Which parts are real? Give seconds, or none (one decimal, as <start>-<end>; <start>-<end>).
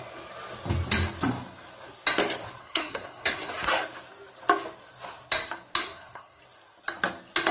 0.0-2.6; 3.5-5.8; 6.4-7.5